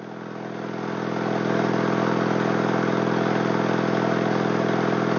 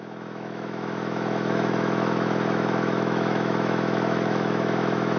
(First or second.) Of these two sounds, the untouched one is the first